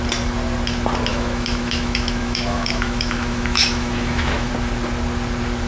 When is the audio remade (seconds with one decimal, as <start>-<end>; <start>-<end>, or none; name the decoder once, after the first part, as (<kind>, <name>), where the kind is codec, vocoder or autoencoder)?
1.1-4.5 (autoencoder, DAC-VAE)